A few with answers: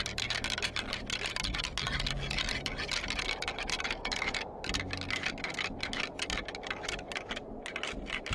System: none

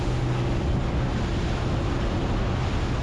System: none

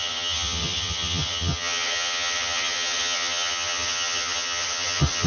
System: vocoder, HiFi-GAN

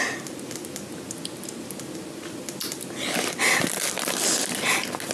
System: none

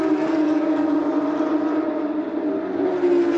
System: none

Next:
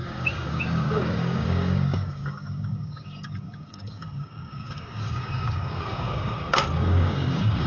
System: codec, DAC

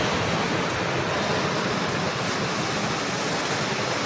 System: none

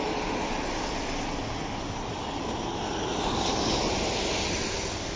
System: vocoder, BigVGAN v2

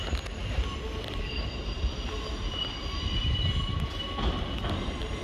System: none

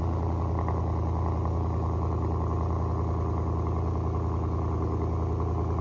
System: none